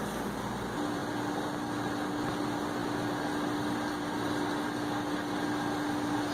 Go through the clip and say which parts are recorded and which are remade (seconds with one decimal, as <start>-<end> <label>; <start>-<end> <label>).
0.0-6.3 recorded